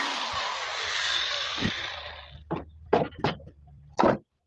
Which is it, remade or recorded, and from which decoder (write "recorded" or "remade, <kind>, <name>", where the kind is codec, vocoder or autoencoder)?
recorded